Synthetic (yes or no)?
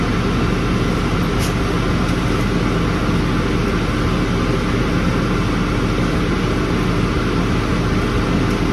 no